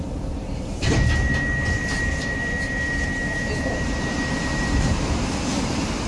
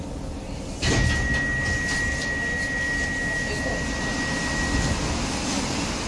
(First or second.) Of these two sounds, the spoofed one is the first